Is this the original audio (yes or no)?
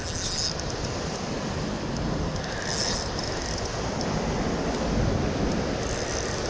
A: yes